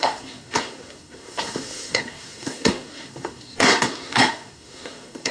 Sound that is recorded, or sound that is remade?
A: remade